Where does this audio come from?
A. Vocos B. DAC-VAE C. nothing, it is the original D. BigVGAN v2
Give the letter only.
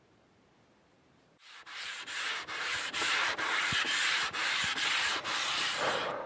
D